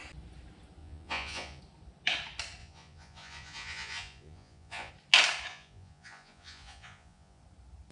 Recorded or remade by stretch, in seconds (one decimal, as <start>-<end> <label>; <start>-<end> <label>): 0.0-0.8 recorded; 0.8-1.6 remade; 1.6-2.6 recorded; 2.6-4.9 remade; 4.9-5.5 recorded; 5.5-7.4 remade; 7.4-7.9 recorded